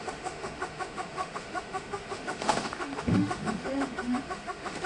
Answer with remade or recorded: remade